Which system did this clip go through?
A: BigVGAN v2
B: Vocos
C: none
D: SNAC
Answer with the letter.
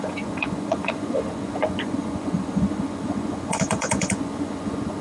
B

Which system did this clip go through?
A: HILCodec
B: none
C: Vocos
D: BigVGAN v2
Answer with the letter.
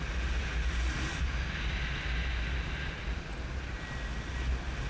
B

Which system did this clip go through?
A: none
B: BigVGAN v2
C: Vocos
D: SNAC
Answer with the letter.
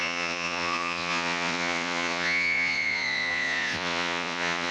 C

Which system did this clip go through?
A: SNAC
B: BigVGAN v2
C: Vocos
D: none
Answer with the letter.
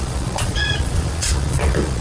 C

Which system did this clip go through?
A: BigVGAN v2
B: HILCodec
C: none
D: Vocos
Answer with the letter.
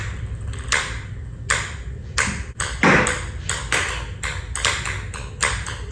C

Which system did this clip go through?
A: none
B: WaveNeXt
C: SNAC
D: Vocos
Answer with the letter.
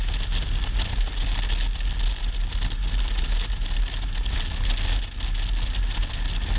A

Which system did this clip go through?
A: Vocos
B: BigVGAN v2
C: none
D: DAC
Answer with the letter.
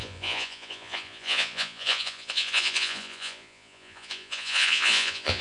A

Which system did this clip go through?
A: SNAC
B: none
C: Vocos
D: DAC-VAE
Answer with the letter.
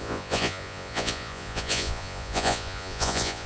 C